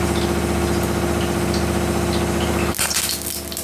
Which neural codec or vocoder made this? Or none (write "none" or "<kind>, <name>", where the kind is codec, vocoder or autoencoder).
none